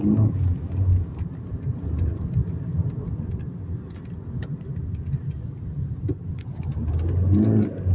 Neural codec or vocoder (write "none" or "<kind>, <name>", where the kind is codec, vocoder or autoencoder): none